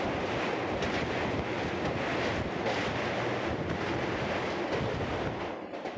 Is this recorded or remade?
recorded